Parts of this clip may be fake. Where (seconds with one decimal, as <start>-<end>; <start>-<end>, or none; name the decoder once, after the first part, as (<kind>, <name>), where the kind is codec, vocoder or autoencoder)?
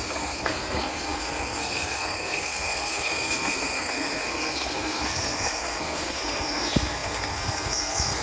0.0-8.2 (codec, SNAC)